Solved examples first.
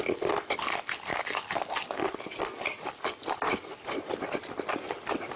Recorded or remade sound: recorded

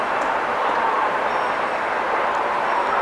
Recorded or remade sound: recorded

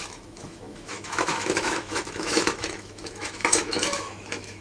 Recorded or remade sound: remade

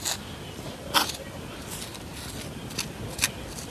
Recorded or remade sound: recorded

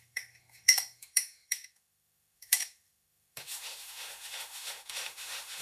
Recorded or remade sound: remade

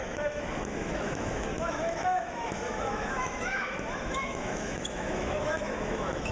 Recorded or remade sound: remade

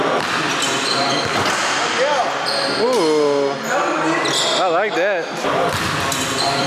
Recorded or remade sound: recorded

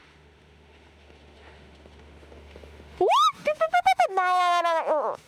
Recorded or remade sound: remade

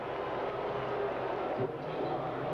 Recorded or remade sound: recorded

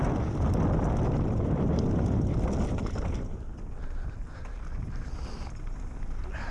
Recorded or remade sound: recorded